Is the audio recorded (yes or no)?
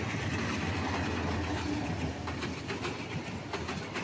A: yes